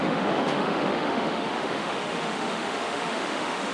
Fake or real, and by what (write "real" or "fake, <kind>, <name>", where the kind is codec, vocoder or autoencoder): fake, autoencoder, DAC-VAE